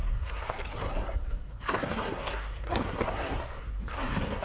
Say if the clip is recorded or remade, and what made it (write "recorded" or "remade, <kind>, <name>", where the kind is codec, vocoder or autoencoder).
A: remade, codec, SNAC